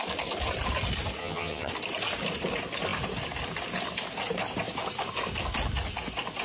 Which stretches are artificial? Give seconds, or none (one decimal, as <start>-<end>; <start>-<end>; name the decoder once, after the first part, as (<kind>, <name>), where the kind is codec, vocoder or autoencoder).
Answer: 1.2-1.7 (vocoder, HiFi-GAN)